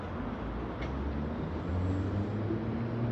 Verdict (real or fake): real